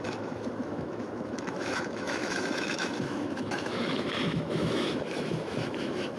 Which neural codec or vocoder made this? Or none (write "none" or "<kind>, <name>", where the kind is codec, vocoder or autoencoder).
autoencoder, DAC-VAE